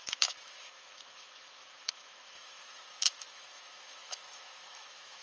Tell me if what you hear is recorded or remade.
remade